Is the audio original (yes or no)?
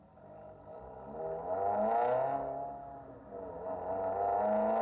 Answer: yes